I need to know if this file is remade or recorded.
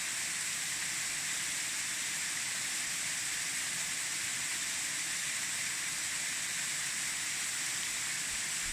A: recorded